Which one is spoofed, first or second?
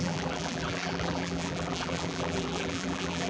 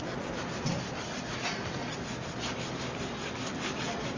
first